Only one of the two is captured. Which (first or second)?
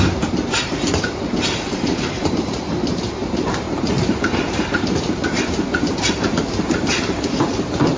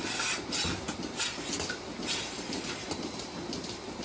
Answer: second